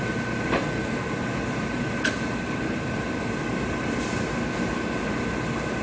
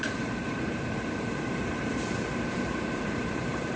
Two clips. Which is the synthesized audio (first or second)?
second